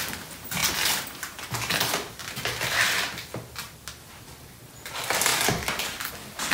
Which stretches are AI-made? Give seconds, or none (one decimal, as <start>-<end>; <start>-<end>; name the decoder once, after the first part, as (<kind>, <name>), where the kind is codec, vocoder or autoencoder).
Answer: none